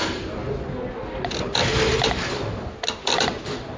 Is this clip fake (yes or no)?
no